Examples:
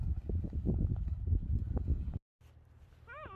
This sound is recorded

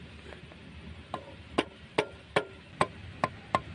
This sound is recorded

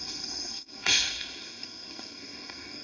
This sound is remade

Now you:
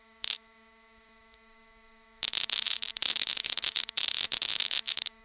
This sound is remade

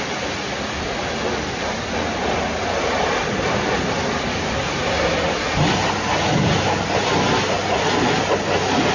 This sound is recorded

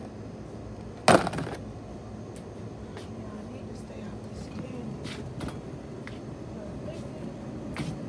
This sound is recorded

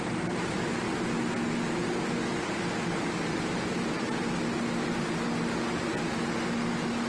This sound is recorded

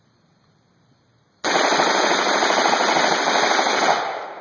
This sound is recorded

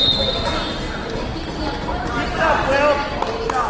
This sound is recorded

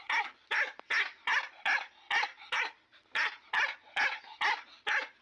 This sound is recorded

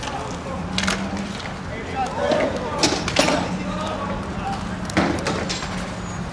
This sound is recorded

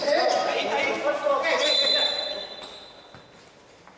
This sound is recorded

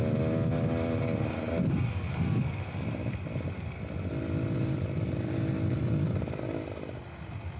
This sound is recorded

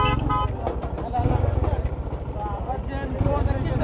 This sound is recorded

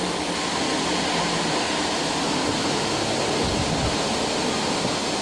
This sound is recorded